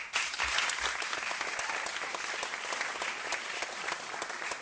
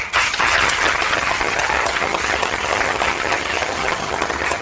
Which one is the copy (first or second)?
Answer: second